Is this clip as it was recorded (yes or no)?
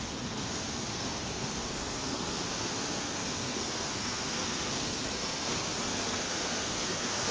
no